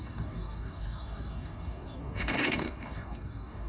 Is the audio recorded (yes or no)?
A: no